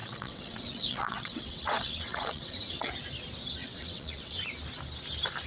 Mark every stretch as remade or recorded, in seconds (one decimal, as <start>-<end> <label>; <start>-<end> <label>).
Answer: 0.0-2.9 remade; 2.9-3.6 recorded; 3.6-4.4 remade; 4.4-5.5 recorded